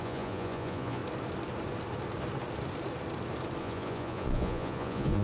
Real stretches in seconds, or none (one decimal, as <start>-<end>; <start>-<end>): 1.0-3.6